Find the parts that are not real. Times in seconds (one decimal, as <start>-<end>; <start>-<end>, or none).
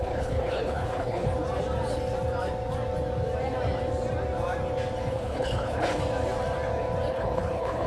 0.0-1.3; 5.1-6.0; 7.1-7.9